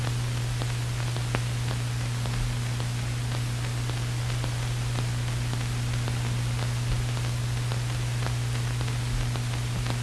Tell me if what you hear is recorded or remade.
recorded